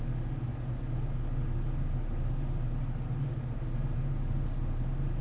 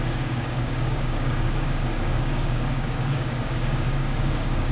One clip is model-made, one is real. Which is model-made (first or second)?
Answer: second